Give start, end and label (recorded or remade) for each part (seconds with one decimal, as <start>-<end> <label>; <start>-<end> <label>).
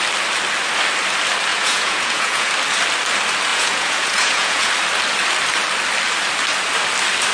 0.0-1.5 recorded; 1.5-2.5 remade; 2.5-3.5 recorded; 3.5-4.7 remade; 4.7-7.3 recorded